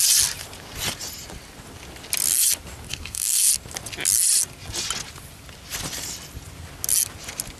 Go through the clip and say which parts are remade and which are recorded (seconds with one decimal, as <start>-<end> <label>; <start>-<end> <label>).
0.0-2.9 recorded; 2.9-3.5 remade; 3.5-7.6 recorded